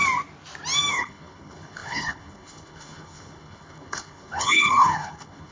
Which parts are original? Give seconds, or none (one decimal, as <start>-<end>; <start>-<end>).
0.0-0.9